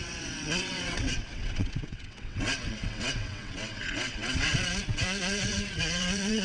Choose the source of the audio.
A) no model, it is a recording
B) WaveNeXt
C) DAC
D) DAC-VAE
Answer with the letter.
B